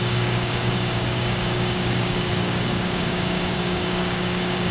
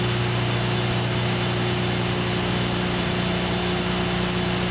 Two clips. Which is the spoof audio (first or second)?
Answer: first